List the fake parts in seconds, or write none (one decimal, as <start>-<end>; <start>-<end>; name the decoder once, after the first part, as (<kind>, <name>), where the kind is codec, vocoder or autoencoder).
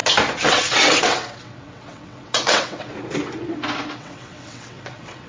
0.5-2.9 (vocoder, WaveNeXt); 3.9-5.3